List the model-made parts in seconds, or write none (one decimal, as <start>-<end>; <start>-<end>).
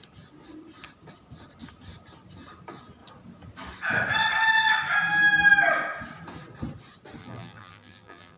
7.2-8.4